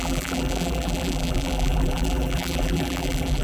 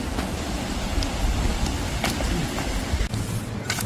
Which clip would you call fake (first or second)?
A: first